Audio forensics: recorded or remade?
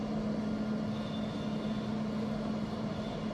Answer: recorded